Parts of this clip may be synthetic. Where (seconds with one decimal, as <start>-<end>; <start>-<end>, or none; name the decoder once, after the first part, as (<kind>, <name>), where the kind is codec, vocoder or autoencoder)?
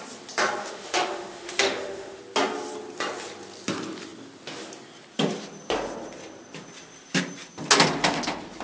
0.6-2.2 (autoencoder, DAC-VAE)